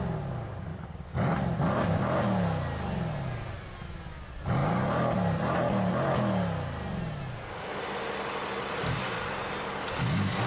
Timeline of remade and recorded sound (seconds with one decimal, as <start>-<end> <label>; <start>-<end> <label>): 0.0-10.5 recorded